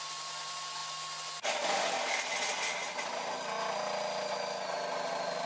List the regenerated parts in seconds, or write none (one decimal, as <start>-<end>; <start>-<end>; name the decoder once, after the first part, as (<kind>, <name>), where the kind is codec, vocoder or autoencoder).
none